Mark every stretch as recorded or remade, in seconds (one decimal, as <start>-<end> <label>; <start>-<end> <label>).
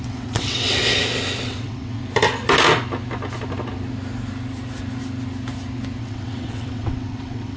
0.0-0.8 remade; 0.8-1.4 recorded; 1.4-2.0 remade; 2.0-6.0 recorded; 6.0-7.6 remade